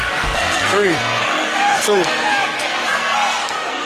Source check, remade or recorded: remade